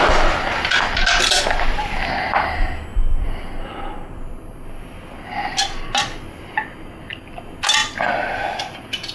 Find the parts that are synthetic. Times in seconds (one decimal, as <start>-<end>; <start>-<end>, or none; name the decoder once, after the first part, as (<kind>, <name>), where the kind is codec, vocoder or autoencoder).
none